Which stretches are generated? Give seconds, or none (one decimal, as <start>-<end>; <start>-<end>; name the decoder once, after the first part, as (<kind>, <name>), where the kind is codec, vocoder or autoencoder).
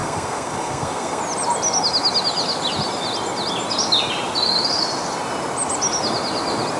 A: 0.0-1.2 (codec, SNAC)